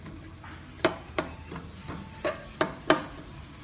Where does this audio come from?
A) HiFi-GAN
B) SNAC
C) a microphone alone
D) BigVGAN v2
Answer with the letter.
C